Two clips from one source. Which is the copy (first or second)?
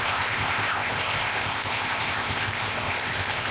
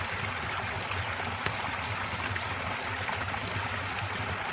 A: first